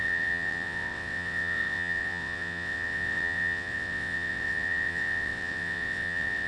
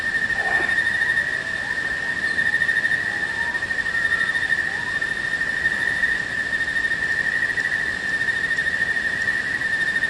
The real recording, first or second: second